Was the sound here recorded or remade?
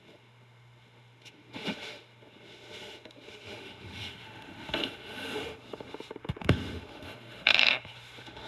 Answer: remade